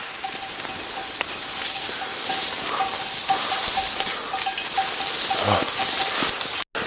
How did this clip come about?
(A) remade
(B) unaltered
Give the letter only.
B